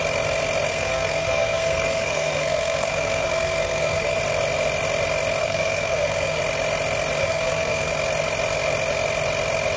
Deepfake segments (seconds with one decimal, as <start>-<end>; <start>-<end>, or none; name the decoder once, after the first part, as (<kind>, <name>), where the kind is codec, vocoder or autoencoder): 0.7-4.2 (codec, SNAC); 5.4-6.4; 7.2-7.9